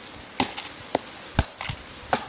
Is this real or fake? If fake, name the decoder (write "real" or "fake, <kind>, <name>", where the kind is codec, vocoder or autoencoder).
real